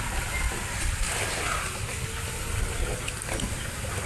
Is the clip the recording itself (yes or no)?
yes